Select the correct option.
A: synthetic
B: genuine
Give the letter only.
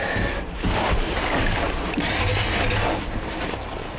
B